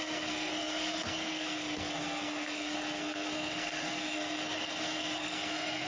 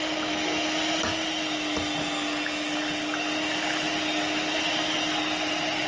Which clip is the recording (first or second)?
second